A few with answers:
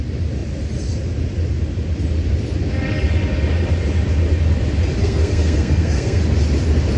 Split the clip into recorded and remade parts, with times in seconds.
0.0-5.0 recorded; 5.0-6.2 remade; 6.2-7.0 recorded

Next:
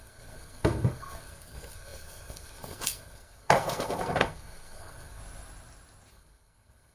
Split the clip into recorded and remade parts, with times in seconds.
0.0-5.2 remade; 5.2-6.1 recorded; 6.1-6.9 remade